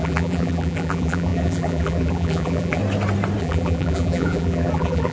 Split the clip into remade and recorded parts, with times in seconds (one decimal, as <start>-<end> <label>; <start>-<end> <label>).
0.0-2.8 remade; 2.8-3.4 recorded; 3.4-5.1 remade